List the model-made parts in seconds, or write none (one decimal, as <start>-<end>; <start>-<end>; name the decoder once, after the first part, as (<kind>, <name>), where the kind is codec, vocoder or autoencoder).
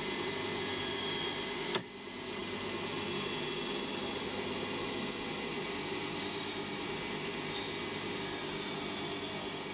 none